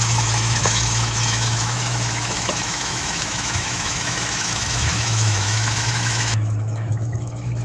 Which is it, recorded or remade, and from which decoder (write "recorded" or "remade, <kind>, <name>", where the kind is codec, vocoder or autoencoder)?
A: remade, autoencoder, DAC-VAE